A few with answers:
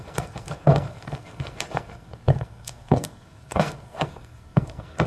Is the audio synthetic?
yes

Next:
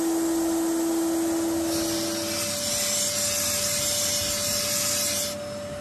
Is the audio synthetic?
no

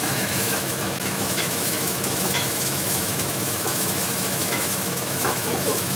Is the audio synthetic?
yes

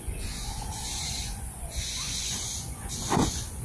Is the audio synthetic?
yes